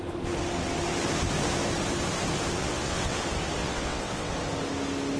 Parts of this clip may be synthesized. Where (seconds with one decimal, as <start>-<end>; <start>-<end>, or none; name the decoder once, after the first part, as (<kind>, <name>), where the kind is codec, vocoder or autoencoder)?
2.6-3.2 (vocoder, WaveNeXt); 3.6-4.3